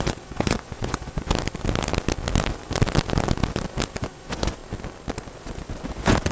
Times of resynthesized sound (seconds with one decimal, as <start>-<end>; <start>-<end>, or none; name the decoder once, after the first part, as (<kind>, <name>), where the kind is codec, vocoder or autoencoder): 0.0-1.3 (vocoder, Vocos); 4.0-4.6; 5.2-6.3